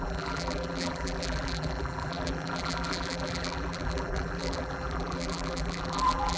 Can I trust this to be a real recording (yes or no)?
no